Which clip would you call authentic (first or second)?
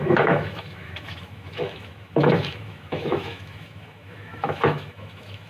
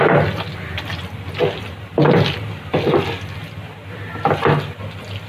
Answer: second